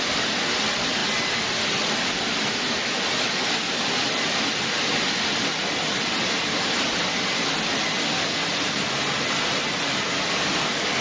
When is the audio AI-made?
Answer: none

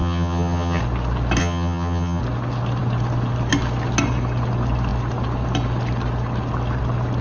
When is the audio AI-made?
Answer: 0.0-0.8 (vocoder, HiFi-GAN); 1.4-2.2

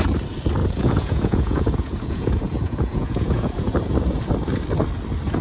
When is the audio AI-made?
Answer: 0.6-3.8 (vocoder, Vocos)

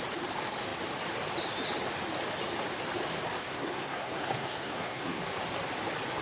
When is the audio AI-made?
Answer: 3.4-5.2 (codec, SNAC)

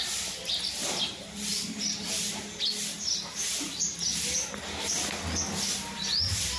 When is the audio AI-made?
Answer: none

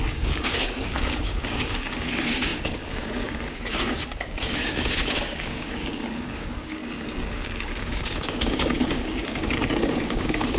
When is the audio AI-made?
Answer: 0.0-6.8 (codec, DAC); 7.3-10.6

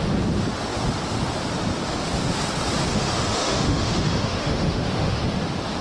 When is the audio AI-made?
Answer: 2.9-5.2 (autoencoder, DAC-VAE)

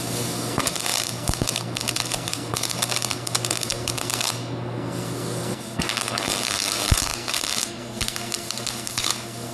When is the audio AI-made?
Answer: 0.0-9.5 (codec, SNAC)